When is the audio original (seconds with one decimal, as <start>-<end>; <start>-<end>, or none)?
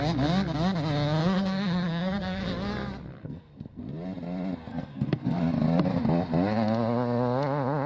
0.0-1.2; 2.4-3.2; 3.8-4.7; 5.4-7.9